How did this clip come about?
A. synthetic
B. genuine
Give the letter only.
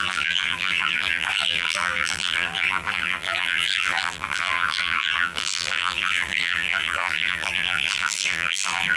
A